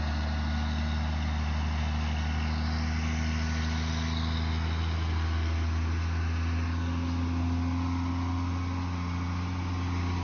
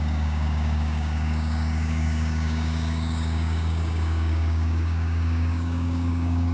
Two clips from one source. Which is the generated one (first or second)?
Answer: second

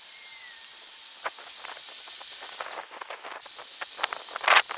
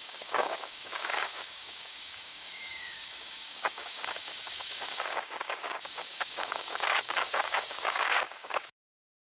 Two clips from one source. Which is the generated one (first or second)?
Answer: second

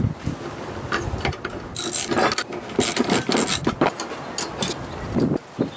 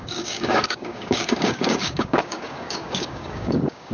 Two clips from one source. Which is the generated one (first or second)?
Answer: second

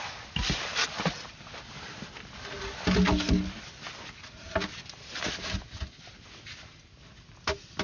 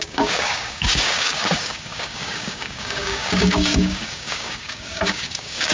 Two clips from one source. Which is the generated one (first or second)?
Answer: second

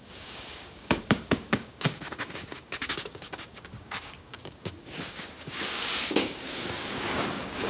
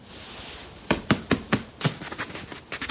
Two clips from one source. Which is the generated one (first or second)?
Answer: first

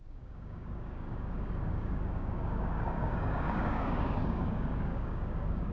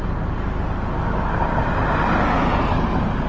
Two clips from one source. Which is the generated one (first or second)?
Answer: first